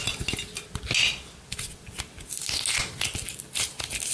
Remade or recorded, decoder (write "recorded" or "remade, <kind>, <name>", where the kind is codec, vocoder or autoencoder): recorded